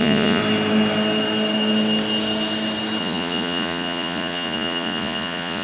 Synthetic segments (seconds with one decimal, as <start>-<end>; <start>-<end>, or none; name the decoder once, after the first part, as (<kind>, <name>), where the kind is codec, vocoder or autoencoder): 0.0-0.4 (vocoder, Vocos); 3.0-5.6